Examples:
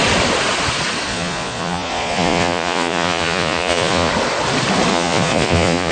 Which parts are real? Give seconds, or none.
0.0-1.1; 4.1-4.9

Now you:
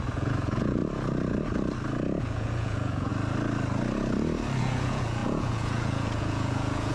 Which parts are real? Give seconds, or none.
0.8-2.2; 3.1-4.6

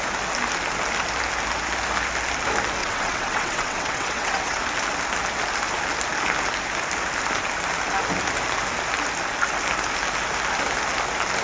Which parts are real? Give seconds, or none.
0.0-2.8; 4.6-11.4